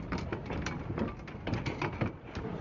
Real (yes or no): yes